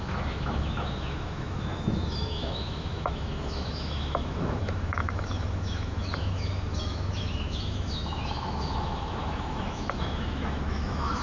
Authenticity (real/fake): fake